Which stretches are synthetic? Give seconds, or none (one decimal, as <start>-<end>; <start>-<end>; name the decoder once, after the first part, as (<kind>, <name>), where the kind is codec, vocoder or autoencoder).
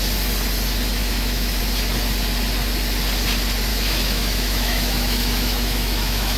1.0-1.6 (autoencoder, DAC-VAE); 3.7-6.4